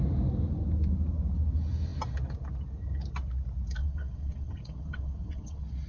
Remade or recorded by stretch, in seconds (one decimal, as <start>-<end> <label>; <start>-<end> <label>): 0.0-3.8 recorded; 3.8-5.9 remade